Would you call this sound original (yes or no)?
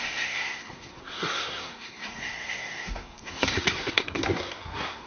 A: no